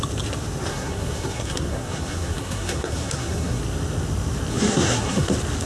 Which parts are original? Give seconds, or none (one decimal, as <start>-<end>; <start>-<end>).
0.0-0.7; 3.6-4.5; 5.3-5.7